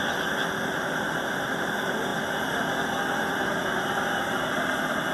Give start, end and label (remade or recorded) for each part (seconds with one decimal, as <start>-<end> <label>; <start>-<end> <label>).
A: 0.0-5.1 remade